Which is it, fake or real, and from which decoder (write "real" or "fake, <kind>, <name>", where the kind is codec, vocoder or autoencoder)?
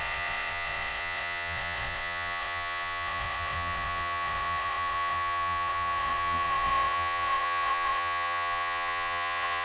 fake, vocoder, Vocos